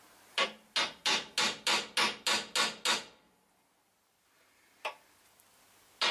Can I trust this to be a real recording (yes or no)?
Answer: yes